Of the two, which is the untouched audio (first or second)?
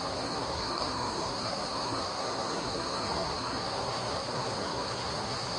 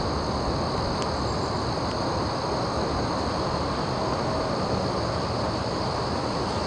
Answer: second